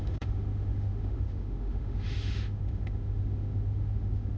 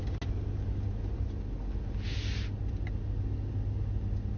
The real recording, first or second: second